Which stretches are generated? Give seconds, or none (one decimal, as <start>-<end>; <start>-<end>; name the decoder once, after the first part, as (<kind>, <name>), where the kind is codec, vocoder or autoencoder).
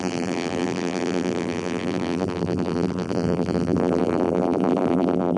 0.0-5.4 (vocoder, BigVGAN v2)